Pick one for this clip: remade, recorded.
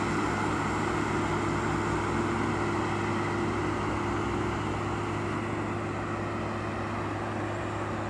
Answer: recorded